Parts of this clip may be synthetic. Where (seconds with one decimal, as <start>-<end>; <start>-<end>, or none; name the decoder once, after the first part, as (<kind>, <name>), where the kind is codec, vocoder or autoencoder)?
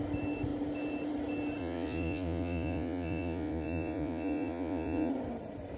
1.6-5.1 (vocoder, Vocos)